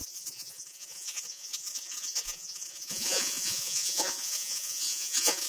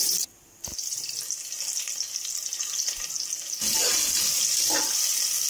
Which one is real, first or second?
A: second